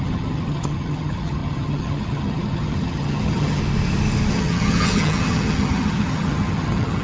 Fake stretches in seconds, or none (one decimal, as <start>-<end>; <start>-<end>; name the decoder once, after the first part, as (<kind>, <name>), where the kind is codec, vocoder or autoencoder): 0.0-3.6 (vocoder, HiFi-GAN); 4.3-7.0